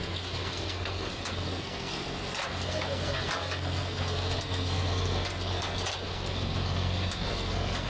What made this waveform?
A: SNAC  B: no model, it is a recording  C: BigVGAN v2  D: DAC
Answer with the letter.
A